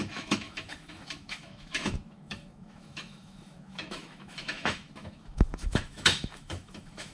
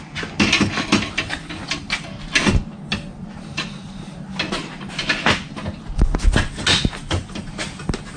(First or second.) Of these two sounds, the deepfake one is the first